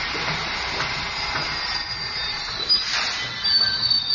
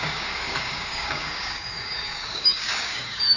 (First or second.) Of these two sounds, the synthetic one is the second